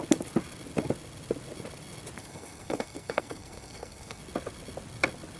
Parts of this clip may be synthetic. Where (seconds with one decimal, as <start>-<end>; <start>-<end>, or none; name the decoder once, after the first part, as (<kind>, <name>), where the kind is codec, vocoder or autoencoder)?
2.2-4.2 (codec, SNAC)